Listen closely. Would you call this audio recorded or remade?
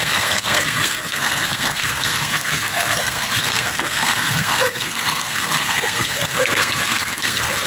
remade